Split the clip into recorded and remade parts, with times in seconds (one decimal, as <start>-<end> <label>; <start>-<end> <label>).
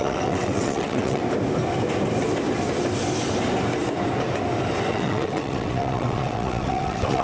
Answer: 0.0-1.2 remade; 1.2-4.9 recorded; 4.9-7.2 remade